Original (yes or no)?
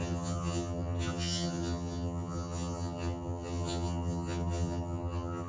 no